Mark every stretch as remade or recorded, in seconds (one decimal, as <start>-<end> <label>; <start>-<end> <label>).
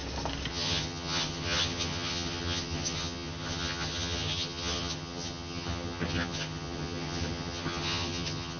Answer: 0.0-0.5 recorded; 0.5-8.6 remade